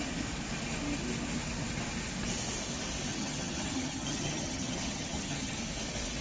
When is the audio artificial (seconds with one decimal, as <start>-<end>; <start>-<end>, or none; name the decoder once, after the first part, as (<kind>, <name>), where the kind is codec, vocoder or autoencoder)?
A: 3.1-5.6 (vocoder, HiFi-GAN)